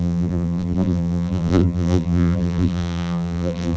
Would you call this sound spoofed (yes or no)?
yes